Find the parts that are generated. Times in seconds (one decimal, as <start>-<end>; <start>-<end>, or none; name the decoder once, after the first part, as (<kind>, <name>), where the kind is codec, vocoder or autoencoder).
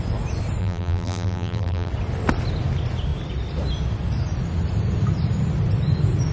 0.6-1.9 (vocoder, BigVGAN v2)